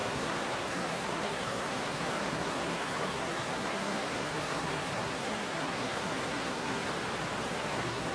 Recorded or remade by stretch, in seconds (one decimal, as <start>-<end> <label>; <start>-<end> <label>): 0.0-6.9 remade; 6.9-7.5 recorded; 7.5-8.1 remade